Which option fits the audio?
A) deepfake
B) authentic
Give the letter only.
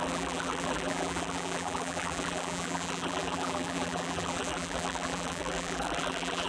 A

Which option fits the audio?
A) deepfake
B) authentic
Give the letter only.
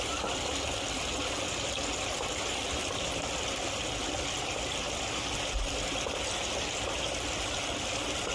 B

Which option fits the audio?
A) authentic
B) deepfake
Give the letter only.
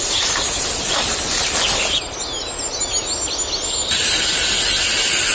A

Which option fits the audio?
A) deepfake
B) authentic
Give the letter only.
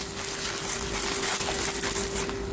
B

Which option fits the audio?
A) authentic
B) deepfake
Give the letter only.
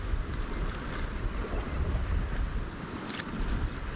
A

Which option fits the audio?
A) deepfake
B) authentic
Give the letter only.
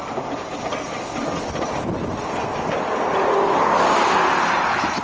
B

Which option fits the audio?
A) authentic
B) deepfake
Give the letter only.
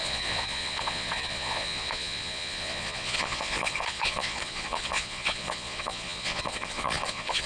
B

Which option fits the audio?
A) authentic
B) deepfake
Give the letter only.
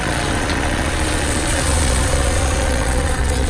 B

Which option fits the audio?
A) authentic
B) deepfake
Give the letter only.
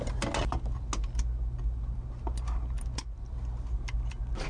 A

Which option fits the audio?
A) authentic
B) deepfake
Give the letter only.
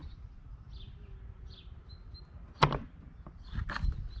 A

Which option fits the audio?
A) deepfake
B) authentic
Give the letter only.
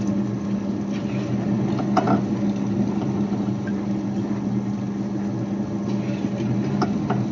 B